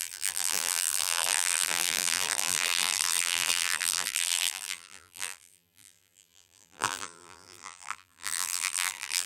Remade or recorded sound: remade